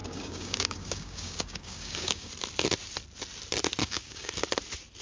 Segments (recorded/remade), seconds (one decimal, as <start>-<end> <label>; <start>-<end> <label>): 0.0-2.3 remade; 2.3-3.8 recorded; 3.8-4.3 remade; 4.3-5.0 recorded